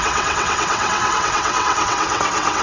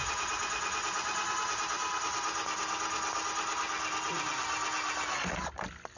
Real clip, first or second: second